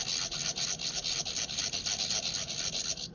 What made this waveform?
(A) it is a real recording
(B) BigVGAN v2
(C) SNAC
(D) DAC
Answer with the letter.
A